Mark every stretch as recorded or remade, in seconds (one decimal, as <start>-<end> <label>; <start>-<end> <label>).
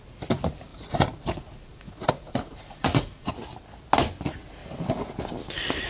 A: 0.0-0.7 recorded; 0.7-3.3 remade; 3.3-5.9 recorded